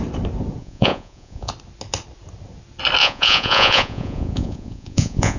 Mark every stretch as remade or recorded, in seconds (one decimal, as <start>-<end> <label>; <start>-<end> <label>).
0.0-0.6 recorded; 0.6-1.5 remade; 1.5-3.0 recorded; 3.0-5.4 remade